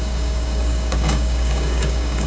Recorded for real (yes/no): no